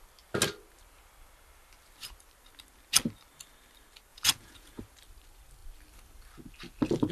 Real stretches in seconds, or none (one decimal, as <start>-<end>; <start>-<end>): 0.0-4.1; 4.8-7.1